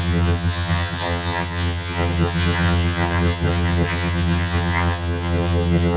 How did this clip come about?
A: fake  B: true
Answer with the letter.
A